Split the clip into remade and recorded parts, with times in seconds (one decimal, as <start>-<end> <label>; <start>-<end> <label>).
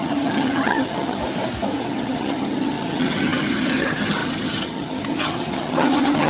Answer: 0.0-1.2 remade; 1.2-1.8 recorded; 1.8-6.3 remade